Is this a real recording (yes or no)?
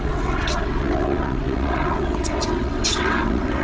no